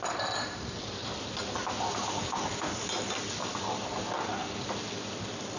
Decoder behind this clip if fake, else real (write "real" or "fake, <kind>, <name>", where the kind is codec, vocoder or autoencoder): real